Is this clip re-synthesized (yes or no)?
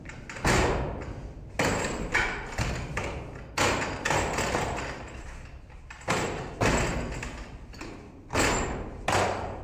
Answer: no